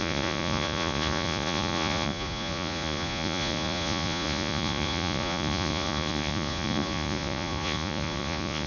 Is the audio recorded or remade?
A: remade